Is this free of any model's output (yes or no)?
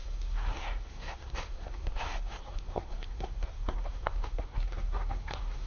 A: no